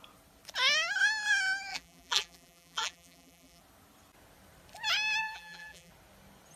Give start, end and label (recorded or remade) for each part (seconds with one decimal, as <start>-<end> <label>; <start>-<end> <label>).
0.0-1.7 recorded; 1.7-3.6 remade; 3.6-5.2 recorded; 5.2-5.9 remade; 5.9-6.6 recorded